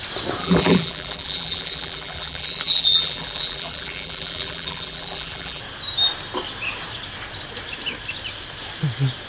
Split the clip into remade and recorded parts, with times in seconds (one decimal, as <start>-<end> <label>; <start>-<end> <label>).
0.0-0.4 recorded; 0.4-5.6 remade; 5.6-9.3 recorded